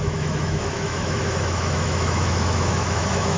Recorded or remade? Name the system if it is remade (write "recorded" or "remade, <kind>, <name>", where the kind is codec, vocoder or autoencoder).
remade, autoencoder, DAC-VAE